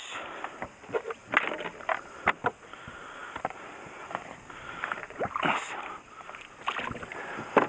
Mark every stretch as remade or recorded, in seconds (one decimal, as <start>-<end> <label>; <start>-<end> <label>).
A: 0.0-7.7 recorded